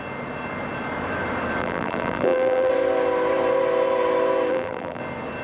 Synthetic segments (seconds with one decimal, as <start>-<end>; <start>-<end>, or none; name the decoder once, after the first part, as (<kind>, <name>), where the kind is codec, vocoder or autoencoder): 1.6-2.7 (vocoder, BigVGAN v2); 4.5-5.0